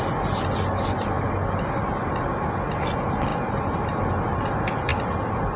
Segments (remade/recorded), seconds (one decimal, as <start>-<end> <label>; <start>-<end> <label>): 0.0-5.6 recorded